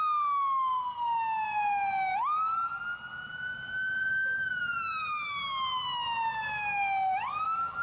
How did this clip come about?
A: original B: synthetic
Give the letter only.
A